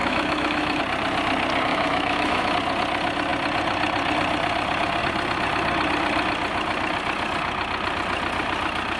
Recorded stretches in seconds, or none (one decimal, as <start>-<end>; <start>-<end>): 0.8-1.7; 2.5-9.0